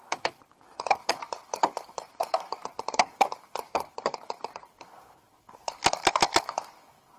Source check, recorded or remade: remade